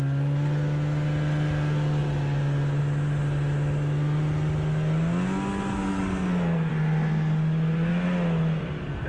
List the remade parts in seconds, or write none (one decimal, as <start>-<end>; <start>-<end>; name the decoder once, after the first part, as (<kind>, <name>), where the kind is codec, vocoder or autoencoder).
5.7-6.7 (codec, SNAC)

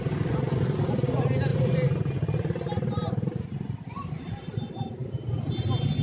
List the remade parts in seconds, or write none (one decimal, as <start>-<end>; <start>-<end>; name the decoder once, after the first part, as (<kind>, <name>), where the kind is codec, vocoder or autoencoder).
none

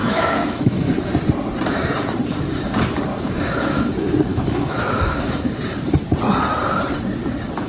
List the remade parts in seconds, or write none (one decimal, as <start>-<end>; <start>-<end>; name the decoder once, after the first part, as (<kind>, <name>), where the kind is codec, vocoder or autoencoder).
0.0-1.1 (autoencoder, DAC-VAE); 3.1-3.9; 4.3-5.5

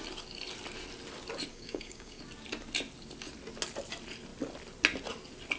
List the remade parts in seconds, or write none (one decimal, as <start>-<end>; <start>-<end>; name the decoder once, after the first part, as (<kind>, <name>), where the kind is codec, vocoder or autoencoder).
1.5-2.2 (codec, DAC)